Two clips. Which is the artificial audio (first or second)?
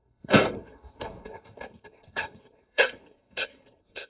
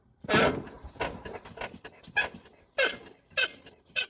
first